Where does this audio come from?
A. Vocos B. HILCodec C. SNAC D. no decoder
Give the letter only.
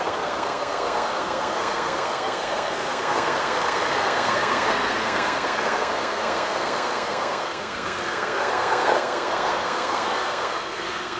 C